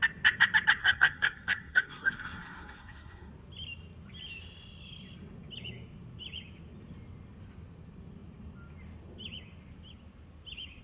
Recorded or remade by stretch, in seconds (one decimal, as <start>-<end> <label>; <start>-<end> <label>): 0.0-0.8 recorded; 0.8-3.3 remade; 3.3-10.8 recorded